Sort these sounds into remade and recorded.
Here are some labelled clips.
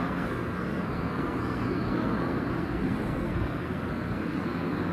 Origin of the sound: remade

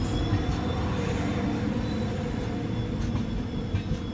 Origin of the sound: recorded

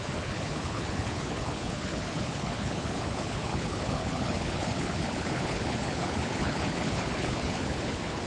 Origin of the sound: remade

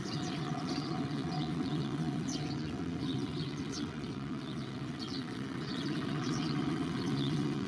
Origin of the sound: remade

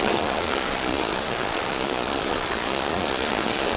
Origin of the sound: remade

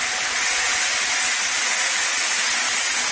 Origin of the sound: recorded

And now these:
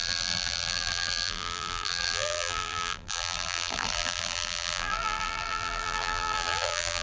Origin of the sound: remade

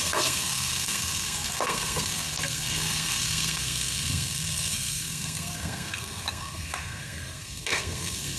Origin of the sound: remade